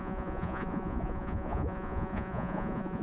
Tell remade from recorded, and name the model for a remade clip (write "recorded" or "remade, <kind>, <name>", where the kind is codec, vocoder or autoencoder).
remade, vocoder, Vocos